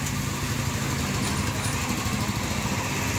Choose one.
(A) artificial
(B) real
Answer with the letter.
B